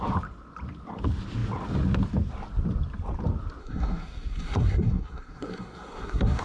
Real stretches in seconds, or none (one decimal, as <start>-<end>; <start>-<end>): 0.0-3.6